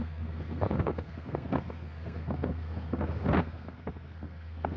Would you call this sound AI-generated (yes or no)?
yes